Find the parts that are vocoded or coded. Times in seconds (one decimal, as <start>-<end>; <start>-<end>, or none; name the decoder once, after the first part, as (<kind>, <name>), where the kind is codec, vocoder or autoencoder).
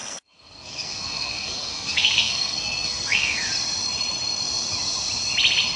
0.0-3.5 (codec, SNAC)